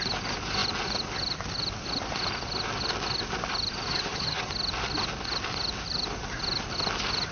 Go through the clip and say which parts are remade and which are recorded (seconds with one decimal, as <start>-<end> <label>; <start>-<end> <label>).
0.0-3.9 recorded; 3.9-4.5 remade; 4.5-7.3 recorded